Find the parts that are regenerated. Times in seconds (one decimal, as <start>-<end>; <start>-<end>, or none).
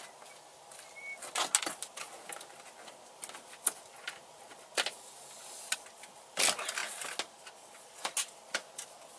none